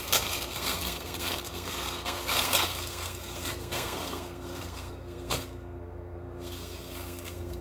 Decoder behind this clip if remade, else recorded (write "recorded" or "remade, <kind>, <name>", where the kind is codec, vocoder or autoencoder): remade, codec, SNAC